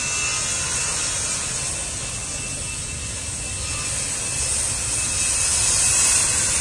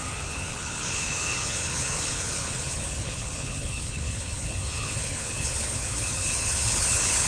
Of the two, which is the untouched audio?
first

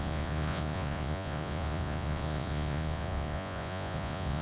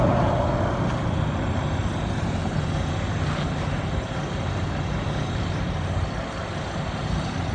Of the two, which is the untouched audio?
second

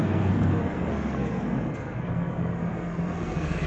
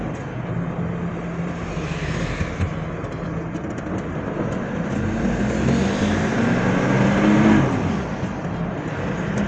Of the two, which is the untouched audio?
second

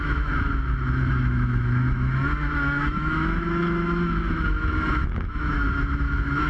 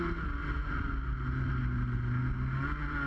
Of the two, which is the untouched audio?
second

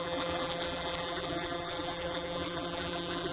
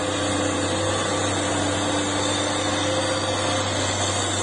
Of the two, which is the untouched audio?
second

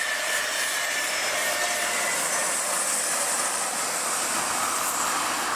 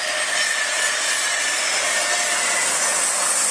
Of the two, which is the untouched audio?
first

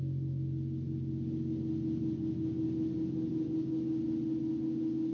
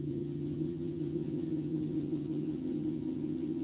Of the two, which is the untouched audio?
first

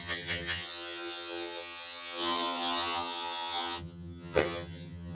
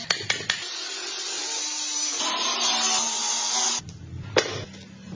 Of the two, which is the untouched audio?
second